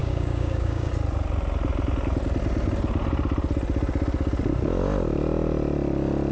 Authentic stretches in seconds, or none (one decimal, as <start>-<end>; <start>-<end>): 0.9-6.3